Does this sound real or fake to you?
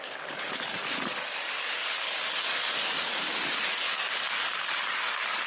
fake